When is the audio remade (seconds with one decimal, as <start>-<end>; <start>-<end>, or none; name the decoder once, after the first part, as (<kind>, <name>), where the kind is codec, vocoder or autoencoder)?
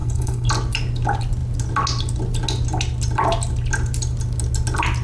0.0-0.5 (codec, SNAC)